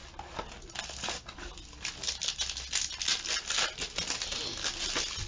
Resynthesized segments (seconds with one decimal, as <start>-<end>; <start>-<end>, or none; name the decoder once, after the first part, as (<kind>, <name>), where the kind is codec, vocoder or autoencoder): none